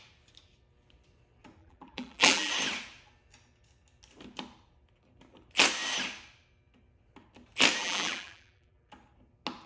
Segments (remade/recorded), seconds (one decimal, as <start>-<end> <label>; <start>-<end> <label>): 0.0-1.6 recorded; 1.6-2.5 remade; 2.5-7.8 recorded; 7.8-8.9 remade; 8.9-9.7 recorded